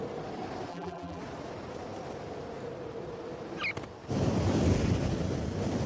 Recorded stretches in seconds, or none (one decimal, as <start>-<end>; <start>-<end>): 0.0-0.7; 1.2-5.9